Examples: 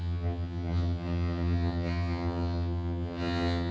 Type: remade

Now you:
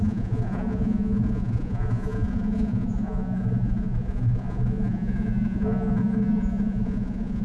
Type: remade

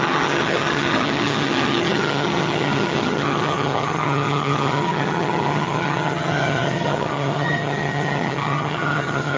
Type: remade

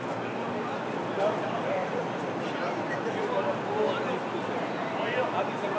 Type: recorded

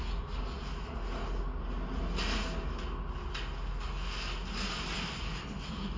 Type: recorded